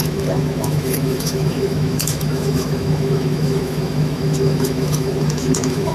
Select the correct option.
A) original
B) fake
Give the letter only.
B